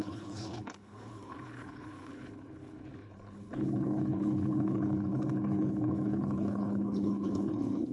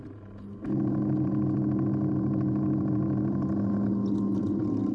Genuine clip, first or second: second